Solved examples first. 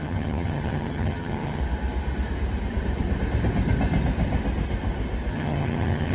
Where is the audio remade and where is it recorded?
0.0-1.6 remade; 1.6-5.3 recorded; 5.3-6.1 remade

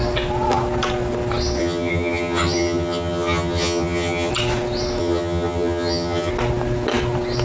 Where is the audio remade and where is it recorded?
0.0-1.6 recorded; 1.6-4.3 remade; 4.3-5.0 recorded; 5.0-6.3 remade; 6.3-7.4 recorded

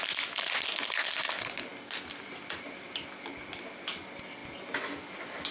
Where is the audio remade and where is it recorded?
0.0-5.5 recorded

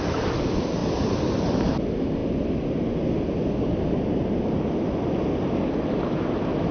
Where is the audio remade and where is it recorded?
0.0-6.7 recorded

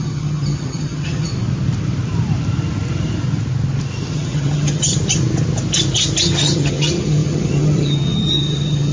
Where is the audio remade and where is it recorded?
0.0-1.3 remade; 1.3-4.1 recorded; 4.1-4.9 remade; 4.9-6.2 recorded; 6.2-8.9 remade

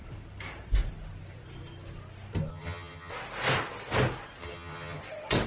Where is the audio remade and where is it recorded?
0.0-2.5 recorded; 2.5-3.1 remade; 3.1-4.4 recorded; 4.4-5.0 remade; 5.0-5.5 recorded

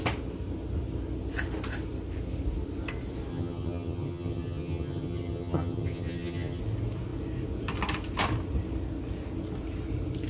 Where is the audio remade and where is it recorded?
0.0-3.3 recorded; 3.3-6.6 remade; 6.6-10.3 recorded